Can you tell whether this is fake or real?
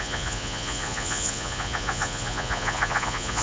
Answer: fake